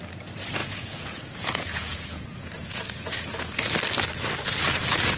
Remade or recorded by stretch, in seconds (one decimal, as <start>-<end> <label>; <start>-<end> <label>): 0.0-0.6 recorded; 0.6-3.7 remade; 3.7-5.2 recorded